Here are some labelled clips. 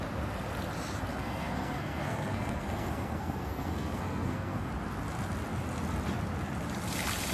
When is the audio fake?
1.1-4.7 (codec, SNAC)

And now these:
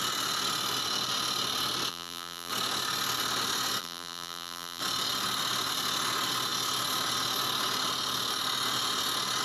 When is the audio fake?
1.9-2.5 (vocoder, BigVGAN v2); 3.8-4.8

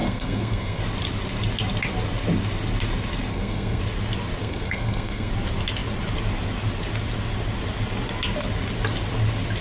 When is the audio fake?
0.0-0.8 (codec, SNAC); 3.3-3.8; 4.4-5.3

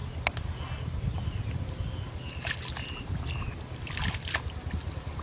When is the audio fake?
none

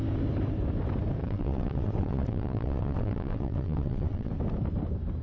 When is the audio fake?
1.2-4.3 (vocoder, WaveNeXt)

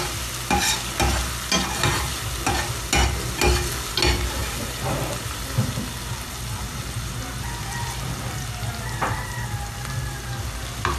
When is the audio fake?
none

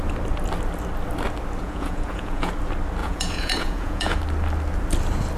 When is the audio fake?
1.6-2.5 (vocoder, Vocos); 3.0-4.2

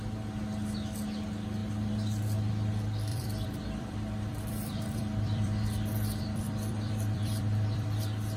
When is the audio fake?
1.6-2.5 (vocoder, BigVGAN v2); 3.1-8.0